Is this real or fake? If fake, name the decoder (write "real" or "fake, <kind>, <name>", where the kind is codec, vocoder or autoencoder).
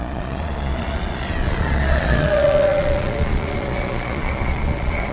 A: fake, vocoder, Vocos